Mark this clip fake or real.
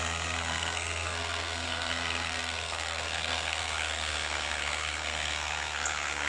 fake